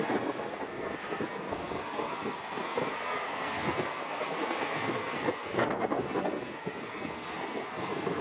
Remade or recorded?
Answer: remade